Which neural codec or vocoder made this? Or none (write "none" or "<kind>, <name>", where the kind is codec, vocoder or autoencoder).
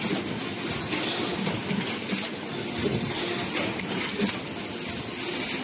none